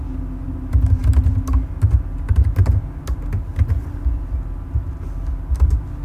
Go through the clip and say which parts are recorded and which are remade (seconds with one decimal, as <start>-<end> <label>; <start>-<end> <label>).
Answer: 0.0-6.0 recorded